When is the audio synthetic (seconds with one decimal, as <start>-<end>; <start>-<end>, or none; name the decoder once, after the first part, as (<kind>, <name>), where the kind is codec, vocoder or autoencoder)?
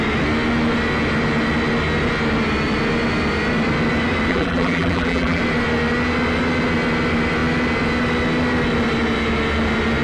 4.3-5.4 (vocoder, BigVGAN v2)